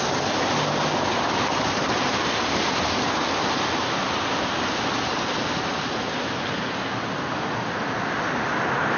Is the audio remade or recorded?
recorded